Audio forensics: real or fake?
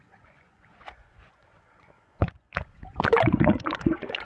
fake